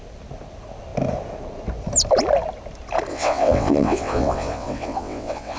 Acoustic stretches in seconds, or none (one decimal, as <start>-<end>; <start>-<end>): 0.0-3.1